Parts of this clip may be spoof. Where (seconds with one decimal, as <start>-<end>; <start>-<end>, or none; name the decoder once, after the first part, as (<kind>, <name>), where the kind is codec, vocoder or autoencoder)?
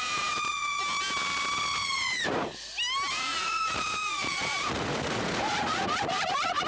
0.0-0.8 (vocoder, Vocos); 1.8-2.5; 3.1-6.7